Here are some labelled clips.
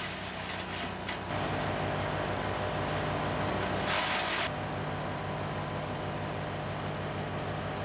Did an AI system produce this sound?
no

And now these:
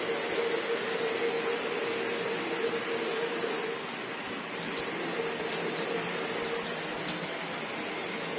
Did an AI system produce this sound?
no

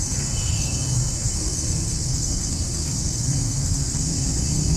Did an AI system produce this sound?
yes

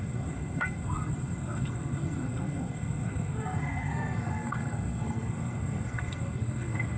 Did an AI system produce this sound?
yes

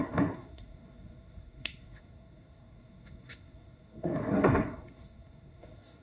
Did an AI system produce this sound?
yes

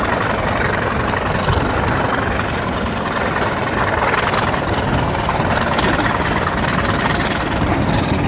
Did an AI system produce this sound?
no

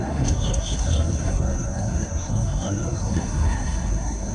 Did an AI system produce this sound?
yes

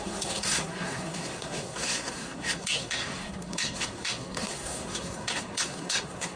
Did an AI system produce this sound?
yes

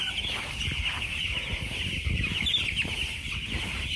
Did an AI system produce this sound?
no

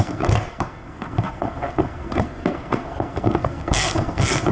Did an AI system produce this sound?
yes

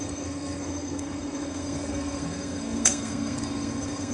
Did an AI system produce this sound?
yes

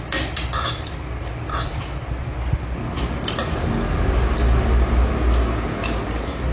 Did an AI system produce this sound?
no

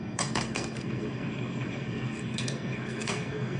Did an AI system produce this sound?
yes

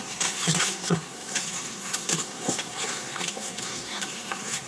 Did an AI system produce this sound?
yes